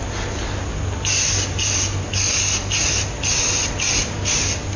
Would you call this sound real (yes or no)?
yes